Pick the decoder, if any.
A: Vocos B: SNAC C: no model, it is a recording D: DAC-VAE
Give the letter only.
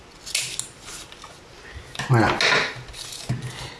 C